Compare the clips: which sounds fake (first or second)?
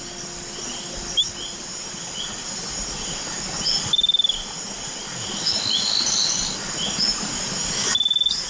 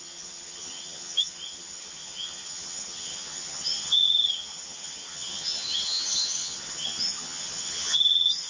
second